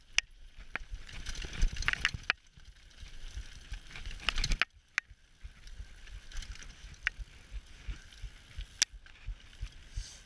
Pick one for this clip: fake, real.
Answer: real